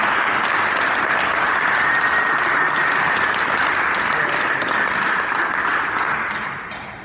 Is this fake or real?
real